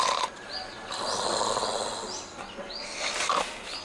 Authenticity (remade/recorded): recorded